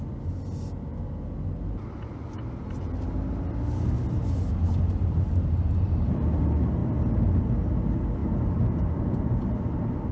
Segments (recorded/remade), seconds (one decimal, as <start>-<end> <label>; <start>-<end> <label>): 0.0-10.1 recorded